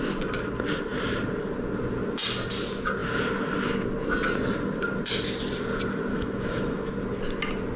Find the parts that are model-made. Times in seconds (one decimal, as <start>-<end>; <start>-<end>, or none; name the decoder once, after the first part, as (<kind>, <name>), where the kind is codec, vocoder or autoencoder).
6.1-6.9 (autoencoder, DAC-VAE)